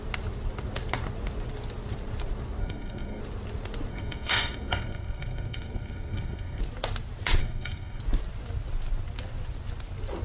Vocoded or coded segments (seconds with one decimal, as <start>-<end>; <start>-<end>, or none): 2.6-3.2; 3.9-6.6; 7.4-8.0